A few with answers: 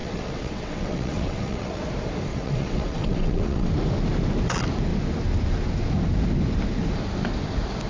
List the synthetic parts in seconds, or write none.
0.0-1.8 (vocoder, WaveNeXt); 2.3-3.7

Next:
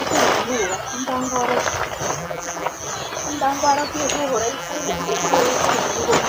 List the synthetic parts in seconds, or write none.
2.2-2.7 (vocoder, BigVGAN v2); 4.6-5.4